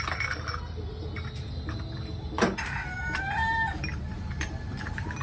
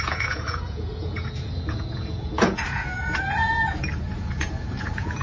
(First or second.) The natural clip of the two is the first